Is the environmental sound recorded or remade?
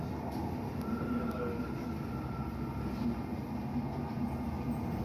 recorded